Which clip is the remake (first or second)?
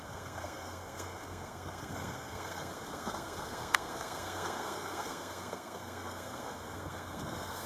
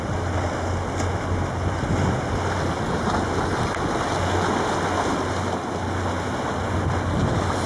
first